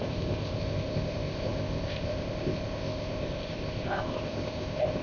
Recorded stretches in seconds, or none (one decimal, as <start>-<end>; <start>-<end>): none